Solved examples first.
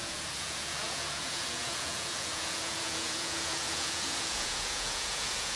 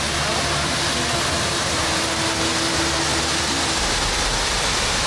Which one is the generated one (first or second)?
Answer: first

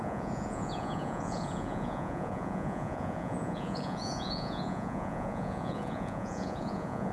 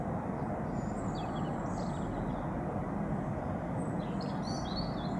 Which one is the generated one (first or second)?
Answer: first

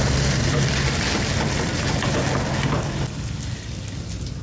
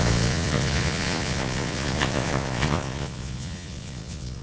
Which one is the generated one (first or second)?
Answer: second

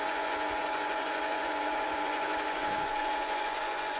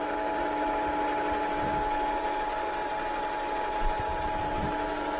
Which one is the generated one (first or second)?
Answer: first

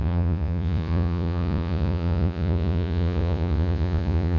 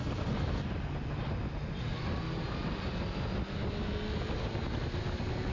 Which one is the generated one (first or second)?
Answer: first